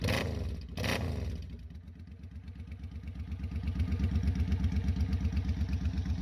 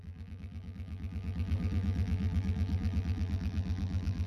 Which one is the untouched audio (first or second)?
first